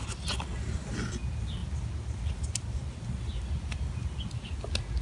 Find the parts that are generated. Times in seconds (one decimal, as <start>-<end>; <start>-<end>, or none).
none